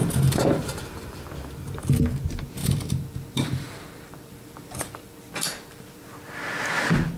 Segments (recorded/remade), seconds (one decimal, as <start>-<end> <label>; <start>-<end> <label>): 0.0-1.2 remade; 1.2-2.6 recorded; 2.6-6.1 remade; 6.1-7.2 recorded